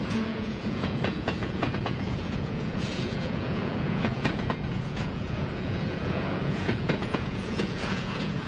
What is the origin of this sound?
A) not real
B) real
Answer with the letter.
A